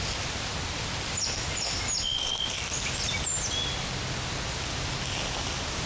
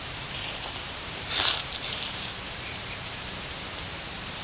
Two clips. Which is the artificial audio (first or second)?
second